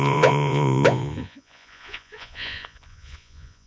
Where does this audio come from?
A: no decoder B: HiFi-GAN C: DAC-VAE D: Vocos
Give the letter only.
D